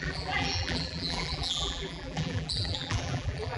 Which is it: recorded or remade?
remade